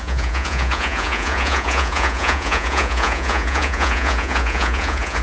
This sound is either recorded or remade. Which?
remade